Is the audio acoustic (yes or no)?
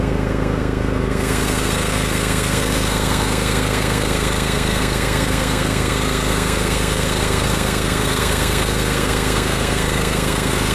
no